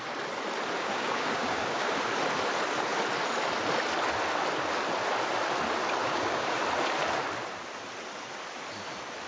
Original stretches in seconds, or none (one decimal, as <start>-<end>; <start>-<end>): 0.0-0.8; 2.1-6.0; 6.6-9.3